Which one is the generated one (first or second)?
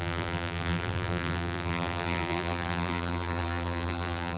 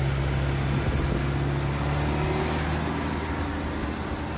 first